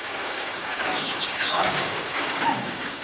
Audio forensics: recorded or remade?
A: remade